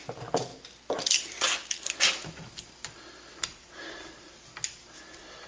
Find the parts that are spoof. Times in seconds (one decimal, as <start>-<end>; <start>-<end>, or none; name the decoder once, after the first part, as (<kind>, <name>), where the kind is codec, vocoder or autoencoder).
none